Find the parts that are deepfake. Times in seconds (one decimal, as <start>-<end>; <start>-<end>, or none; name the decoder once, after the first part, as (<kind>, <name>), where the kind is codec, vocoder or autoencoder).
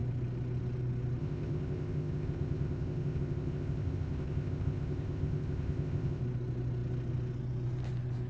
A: 1.2-6.2 (codec, ZipCodec)